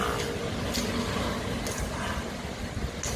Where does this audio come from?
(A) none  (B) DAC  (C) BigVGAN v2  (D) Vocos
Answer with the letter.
A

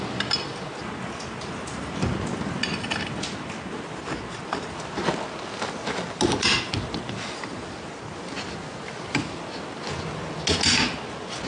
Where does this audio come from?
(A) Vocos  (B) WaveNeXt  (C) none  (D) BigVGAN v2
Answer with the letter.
C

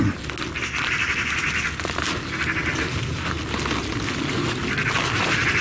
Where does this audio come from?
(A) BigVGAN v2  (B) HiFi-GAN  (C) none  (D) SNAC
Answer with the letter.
C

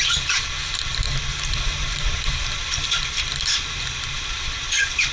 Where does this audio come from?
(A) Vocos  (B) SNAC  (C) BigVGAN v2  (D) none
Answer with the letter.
C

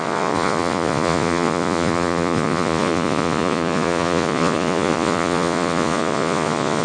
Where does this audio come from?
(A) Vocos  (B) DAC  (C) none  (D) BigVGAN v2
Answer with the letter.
A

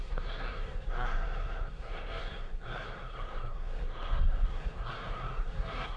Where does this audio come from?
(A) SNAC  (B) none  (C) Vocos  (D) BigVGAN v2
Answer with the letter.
A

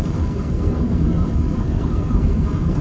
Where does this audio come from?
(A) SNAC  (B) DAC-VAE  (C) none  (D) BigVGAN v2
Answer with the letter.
A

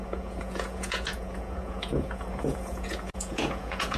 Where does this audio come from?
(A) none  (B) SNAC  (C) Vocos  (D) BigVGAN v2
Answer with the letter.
C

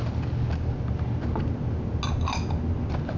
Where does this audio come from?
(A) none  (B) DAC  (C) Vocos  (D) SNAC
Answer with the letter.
A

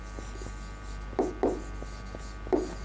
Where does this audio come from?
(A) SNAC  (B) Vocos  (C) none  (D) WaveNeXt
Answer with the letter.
C